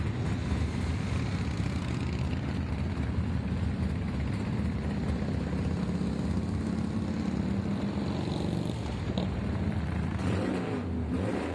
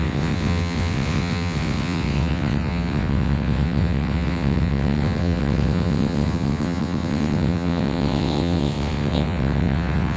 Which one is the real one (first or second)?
first